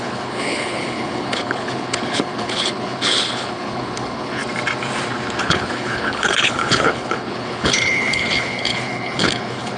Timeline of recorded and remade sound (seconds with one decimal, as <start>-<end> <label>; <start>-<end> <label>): 0.0-4.4 remade; 4.4-5.4 recorded; 5.4-9.8 remade